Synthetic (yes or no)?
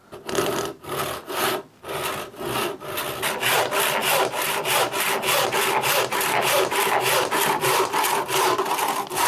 no